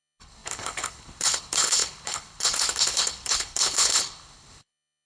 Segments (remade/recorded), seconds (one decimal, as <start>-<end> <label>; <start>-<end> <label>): 0.0-5.1 remade